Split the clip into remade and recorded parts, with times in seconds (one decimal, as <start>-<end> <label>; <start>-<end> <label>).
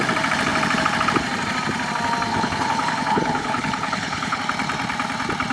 0.0-2.3 recorded; 2.3-4.4 remade; 4.4-5.5 recorded